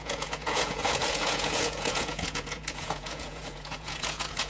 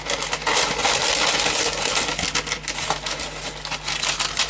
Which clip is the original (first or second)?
second